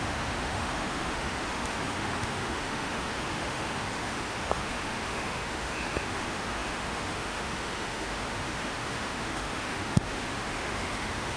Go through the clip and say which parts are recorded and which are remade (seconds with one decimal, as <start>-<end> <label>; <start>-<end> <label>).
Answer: 0.0-11.4 remade